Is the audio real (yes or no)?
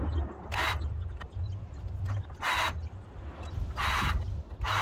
yes